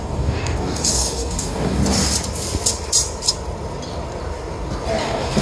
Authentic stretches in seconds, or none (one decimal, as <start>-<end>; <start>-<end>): 1.8-5.0